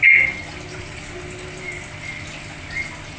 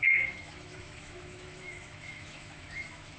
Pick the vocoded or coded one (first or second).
second